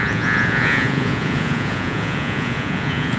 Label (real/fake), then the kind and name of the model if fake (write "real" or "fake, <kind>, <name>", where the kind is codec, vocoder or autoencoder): fake, vocoder, Vocos